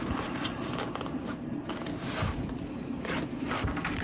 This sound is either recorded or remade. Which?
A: remade